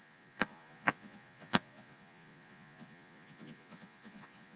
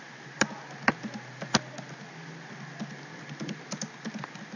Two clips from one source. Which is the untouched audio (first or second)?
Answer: second